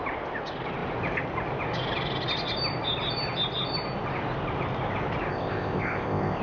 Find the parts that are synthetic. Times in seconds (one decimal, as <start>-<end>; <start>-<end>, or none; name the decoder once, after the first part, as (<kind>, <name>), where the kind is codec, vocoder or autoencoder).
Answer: 5.3-6.4 (codec, ZipCodec)